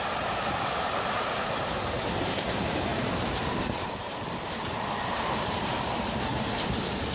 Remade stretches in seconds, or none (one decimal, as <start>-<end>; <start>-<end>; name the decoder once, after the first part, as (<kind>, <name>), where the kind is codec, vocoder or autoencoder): 0.0-7.1 (vocoder, BigVGAN v2)